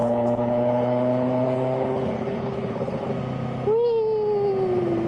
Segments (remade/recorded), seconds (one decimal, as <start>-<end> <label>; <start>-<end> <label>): 0.0-3.1 remade; 3.1-5.1 recorded

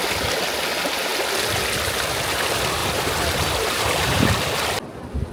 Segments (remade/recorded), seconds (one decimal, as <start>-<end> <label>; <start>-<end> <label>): 0.0-2.8 recorded; 2.8-4.3 remade; 4.3-5.3 recorded

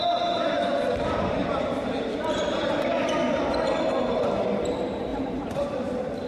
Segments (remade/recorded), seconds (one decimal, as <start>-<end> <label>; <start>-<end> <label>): 0.0-1.4 recorded; 1.4-3.0 remade; 3.0-5.1 recorded; 5.1-5.6 remade; 5.6-6.3 recorded

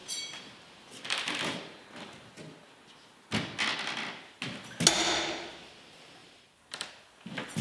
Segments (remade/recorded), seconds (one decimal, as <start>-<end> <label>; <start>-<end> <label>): 0.0-2.3 remade; 2.3-6.2 recorded; 6.2-6.9 remade; 6.9-7.6 recorded

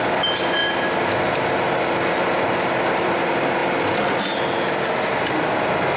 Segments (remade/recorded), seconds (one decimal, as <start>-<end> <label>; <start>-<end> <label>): 0.0-6.0 recorded